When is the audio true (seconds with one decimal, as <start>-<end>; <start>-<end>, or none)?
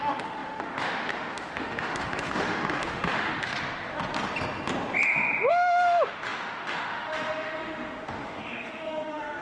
3.5-5.5